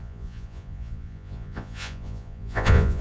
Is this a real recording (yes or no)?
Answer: no